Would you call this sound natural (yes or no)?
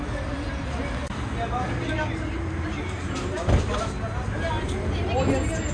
yes